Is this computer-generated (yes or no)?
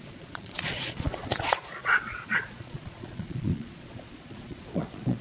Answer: yes